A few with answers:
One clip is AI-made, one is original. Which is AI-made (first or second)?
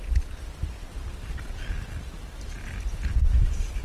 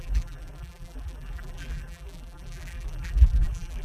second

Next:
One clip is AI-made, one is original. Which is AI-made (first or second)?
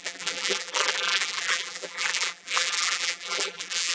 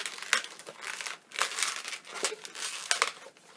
first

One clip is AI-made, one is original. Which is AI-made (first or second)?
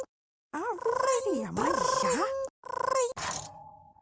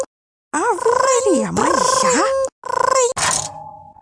first